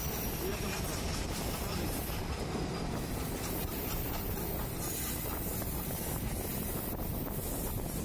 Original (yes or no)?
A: yes